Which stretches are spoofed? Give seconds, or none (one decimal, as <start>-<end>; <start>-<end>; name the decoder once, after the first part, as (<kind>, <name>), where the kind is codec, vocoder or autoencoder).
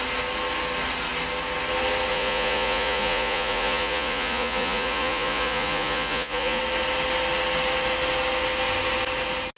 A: 2.1-6.6 (vocoder, Vocos)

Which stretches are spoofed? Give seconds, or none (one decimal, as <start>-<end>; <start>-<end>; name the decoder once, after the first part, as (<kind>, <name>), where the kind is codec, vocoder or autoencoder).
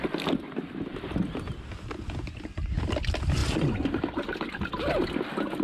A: none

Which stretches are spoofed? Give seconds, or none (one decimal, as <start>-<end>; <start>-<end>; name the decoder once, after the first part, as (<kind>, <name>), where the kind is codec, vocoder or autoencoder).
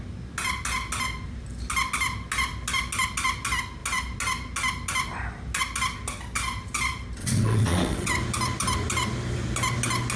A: 7.2-8.1 (vocoder, WaveNeXt)